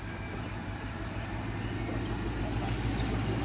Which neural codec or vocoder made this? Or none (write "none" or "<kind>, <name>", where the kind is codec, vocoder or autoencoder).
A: none